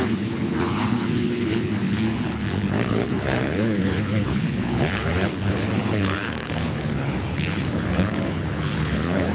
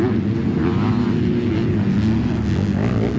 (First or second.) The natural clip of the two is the second